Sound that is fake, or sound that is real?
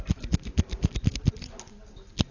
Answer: real